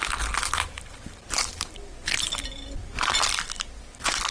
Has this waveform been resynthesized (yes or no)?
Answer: no